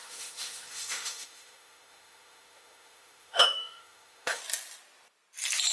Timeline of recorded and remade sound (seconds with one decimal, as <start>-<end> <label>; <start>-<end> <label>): 0.0-4.4 remade; 4.4-5.7 recorded